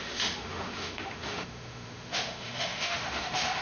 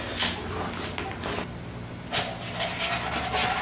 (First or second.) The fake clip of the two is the first